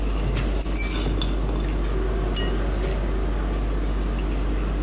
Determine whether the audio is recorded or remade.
recorded